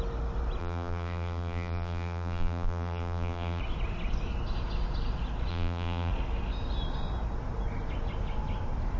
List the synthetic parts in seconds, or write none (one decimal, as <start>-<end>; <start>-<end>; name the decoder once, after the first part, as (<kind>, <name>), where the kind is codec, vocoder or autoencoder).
0.6-3.6 (vocoder, BigVGAN v2); 5.5-6.1